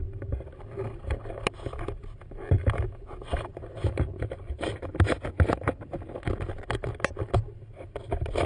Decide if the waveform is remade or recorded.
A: recorded